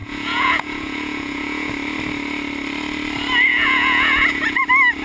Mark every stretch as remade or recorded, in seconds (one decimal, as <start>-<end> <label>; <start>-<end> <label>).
0.0-1.7 remade; 1.7-3.5 recorded; 3.5-4.6 remade; 4.6-5.0 recorded